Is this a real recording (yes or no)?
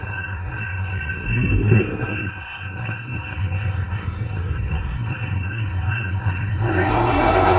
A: no